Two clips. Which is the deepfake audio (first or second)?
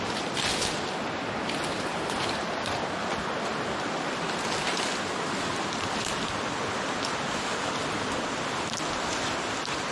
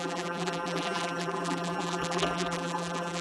second